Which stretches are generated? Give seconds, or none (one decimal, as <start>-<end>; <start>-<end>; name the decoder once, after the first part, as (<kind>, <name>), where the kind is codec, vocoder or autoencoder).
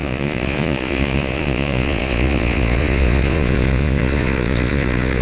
0.0-5.2 (vocoder, Vocos)